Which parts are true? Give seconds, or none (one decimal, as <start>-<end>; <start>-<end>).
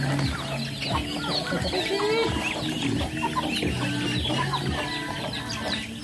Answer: 0.0-6.0